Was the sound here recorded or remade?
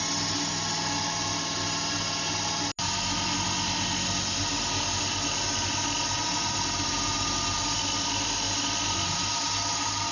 recorded